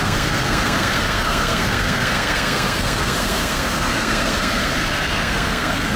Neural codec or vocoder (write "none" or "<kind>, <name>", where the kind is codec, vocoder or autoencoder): codec, SNAC